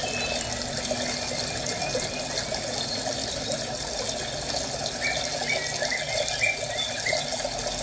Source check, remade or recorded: recorded